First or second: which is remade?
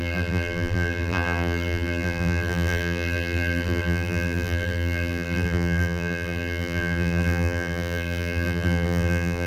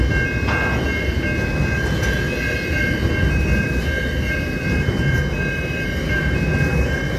first